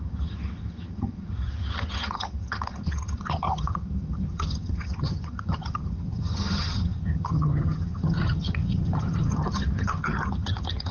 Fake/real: fake